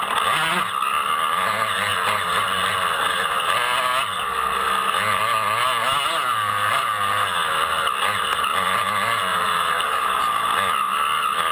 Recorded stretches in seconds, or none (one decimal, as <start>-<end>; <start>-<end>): 0.0-1.9; 2.7-9.3; 10.2-11.5